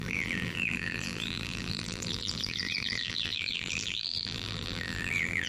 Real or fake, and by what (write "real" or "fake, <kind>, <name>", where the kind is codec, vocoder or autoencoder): fake, vocoder, BigVGAN v2